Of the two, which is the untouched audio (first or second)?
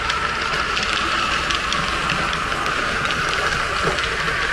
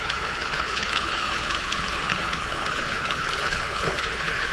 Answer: first